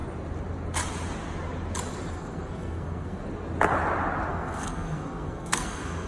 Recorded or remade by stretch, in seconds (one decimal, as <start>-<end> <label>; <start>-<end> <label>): 0.0-2.1 recorded; 2.1-3.2 remade; 3.2-4.3 recorded; 4.3-6.1 remade